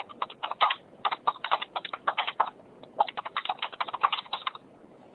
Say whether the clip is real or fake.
real